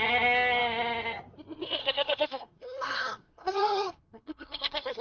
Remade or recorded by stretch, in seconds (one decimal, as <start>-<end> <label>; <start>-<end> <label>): 0.0-1.8 recorded; 1.8-5.0 remade